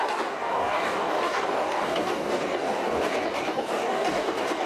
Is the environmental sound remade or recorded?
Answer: remade